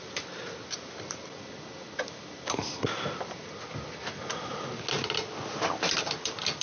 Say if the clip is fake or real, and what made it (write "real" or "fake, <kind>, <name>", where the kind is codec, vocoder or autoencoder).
real